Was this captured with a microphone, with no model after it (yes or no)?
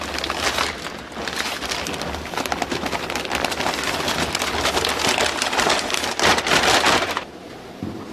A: yes